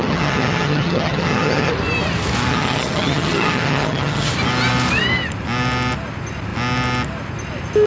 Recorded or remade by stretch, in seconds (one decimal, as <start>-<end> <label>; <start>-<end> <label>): 0.0-1.7 remade; 1.7-2.5 recorded; 2.5-4.3 remade; 4.3-7.9 recorded